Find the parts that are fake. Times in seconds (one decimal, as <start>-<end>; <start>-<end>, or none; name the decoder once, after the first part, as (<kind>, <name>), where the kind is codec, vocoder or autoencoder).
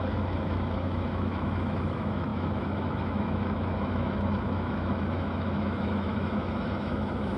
0.0-7.4 (autoencoder, DAC-VAE)